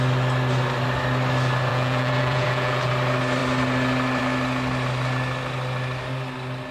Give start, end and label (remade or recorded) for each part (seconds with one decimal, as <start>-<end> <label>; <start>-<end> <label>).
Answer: 0.0-1.7 recorded; 1.7-2.9 remade; 2.9-6.7 recorded